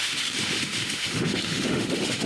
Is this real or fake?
fake